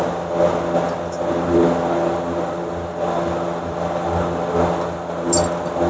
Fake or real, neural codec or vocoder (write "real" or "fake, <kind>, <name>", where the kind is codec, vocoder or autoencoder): real